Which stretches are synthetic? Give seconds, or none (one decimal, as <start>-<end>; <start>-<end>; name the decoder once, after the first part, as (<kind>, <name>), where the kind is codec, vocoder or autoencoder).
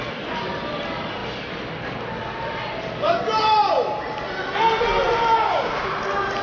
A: 5.3-5.9 (codec, DAC)